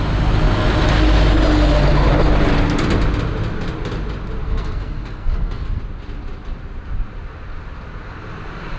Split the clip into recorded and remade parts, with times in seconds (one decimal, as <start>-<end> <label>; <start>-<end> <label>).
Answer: 0.0-4.4 recorded; 4.4-5.8 remade; 5.8-8.8 recorded